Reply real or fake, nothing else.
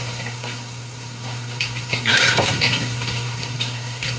fake